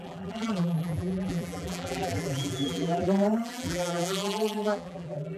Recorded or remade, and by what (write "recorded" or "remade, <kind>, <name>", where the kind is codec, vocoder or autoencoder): remade, vocoder, BigVGAN v2